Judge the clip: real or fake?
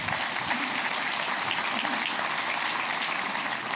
real